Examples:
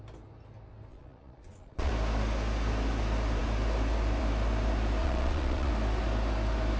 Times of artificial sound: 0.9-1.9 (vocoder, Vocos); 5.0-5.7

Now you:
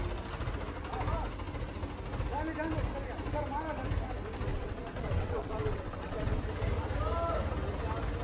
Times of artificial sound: 4.5-6.4 (vocoder, WaveNeXt)

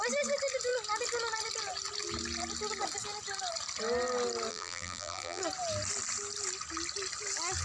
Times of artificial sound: 4.5-5.4 (vocoder, BigVGAN v2)

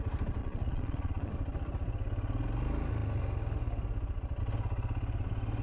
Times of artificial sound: 0.4-1.3 (vocoder, Vocos)

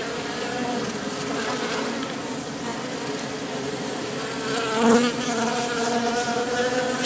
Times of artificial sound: 0.0-1.5 (vocoder, BigVGAN v2)

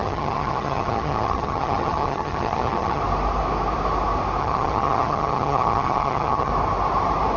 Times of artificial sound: 0.0-3.0 (vocoder, HiFi-GAN); 4.4-6.5

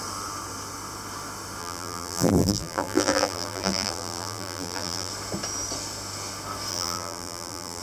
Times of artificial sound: 1.6-5.1 (vocoder, BigVGAN v2); 6.7-7.8